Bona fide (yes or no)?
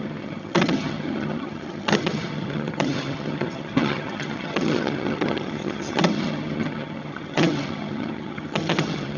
no